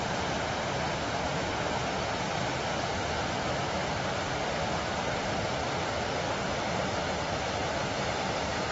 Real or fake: real